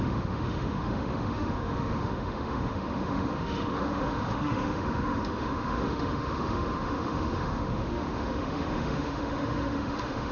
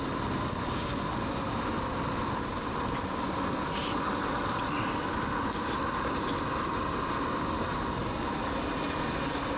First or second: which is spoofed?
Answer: first